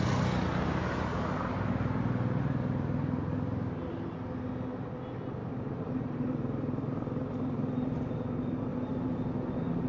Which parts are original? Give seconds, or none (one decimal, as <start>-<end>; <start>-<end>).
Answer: 0.0-5.4; 8.1-8.7; 9.2-9.9